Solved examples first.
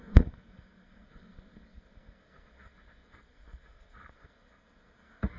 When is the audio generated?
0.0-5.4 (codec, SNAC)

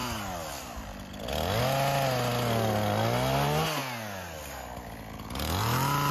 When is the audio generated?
none

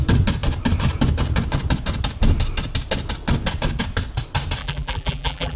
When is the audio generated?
4.6-5.6 (vocoder, BigVGAN v2)

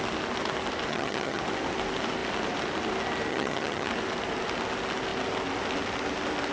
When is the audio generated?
0.9-1.4 (vocoder, HiFi-GAN); 3.3-3.9

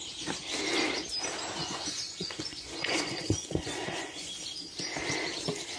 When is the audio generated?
1.6-4.3 (vocoder, Vocos)

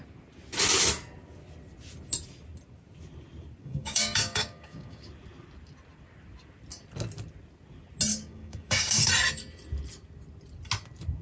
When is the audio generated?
3.6-5.1 (codec, DAC); 8.1-9.1

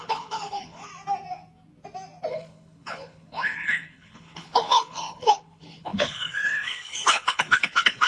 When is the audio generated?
0.0-0.9 (codec, HILCodec); 2.3-8.1